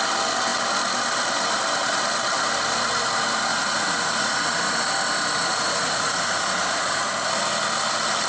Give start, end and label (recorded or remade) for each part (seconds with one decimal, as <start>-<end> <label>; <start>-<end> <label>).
0.0-3.5 recorded; 3.5-4.8 remade; 4.8-5.4 recorded; 5.4-7.1 remade; 7.1-8.3 recorded